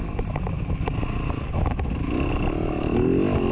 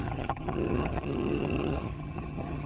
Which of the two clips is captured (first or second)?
first